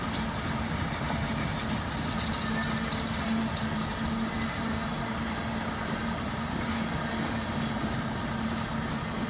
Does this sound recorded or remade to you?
recorded